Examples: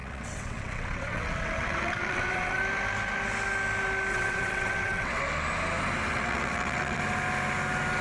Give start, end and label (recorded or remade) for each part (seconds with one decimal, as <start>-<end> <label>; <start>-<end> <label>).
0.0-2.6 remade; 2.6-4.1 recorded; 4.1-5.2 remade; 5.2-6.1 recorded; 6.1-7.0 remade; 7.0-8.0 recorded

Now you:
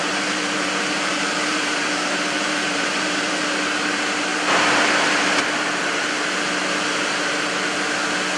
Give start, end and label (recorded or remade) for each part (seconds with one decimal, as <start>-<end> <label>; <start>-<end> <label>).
0.0-3.4 remade; 3.4-8.4 recorded

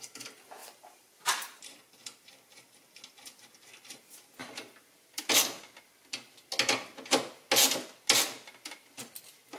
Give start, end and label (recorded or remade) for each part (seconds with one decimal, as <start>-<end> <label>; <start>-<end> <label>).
0.0-0.6 recorded; 0.6-1.8 remade; 1.8-4.4 recorded; 4.4-5.2 remade; 5.2-9.6 recorded

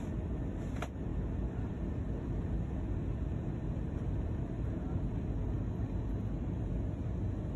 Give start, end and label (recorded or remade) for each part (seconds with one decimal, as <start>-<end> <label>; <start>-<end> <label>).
0.0-1.1 recorded; 1.1-5.7 remade; 5.7-7.6 recorded

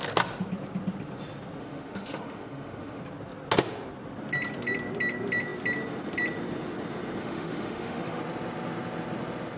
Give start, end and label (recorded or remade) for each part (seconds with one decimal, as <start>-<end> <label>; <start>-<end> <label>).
0.0-1.6 recorded; 1.6-3.0 remade; 3.0-7.2 recorded; 7.2-8.2 remade; 8.2-9.6 recorded